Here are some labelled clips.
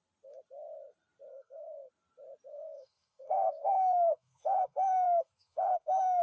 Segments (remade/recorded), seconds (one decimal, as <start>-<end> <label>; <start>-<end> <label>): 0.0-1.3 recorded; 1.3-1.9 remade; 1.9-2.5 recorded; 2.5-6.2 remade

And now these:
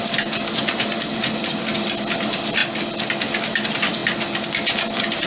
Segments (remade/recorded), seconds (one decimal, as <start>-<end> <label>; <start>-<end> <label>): 0.0-5.3 recorded

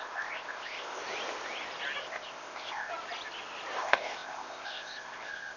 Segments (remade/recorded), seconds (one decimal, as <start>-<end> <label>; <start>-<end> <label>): 0.0-1.0 remade; 1.0-2.0 recorded; 2.0-2.9 remade; 2.9-3.8 recorded; 3.8-5.6 remade

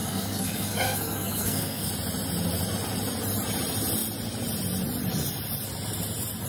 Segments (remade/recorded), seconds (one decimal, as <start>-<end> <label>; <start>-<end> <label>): 0.0-1.9 remade; 1.9-6.5 recorded

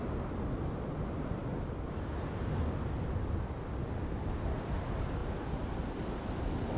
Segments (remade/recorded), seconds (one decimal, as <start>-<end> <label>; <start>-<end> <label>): 0.0-6.8 recorded